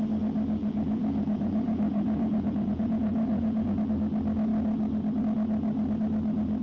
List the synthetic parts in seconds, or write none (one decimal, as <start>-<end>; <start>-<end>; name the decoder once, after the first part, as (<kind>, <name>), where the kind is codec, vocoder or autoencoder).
0.6-3.9 (vocoder, Vocos)